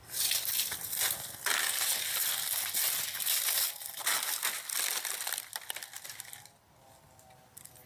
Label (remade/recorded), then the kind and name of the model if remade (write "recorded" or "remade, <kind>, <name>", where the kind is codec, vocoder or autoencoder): recorded